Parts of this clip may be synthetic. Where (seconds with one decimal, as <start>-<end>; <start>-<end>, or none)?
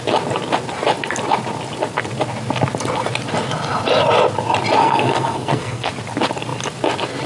4.8-5.9